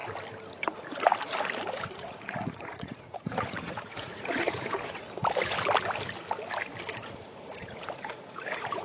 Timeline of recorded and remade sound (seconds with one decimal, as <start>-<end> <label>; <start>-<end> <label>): 0.0-1.9 recorded; 1.9-5.0 remade; 5.0-6.9 recorded; 6.9-8.8 remade